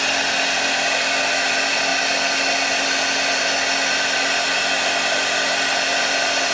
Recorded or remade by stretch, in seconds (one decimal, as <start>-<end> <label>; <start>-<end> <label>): 0.0-6.5 recorded